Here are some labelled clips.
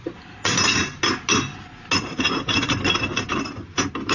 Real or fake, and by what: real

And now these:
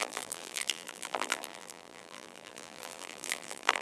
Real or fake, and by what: fake, vocoder, BigVGAN v2